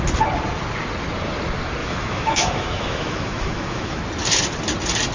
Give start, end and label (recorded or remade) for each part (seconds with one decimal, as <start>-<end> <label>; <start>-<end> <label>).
0.0-1.8 recorded; 1.8-4.0 remade; 4.0-5.1 recorded